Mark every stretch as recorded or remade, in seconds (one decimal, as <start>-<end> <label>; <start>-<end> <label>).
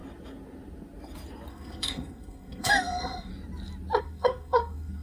0.0-1.5 recorded; 1.5-3.3 remade; 3.3-4.0 recorded; 4.0-5.0 remade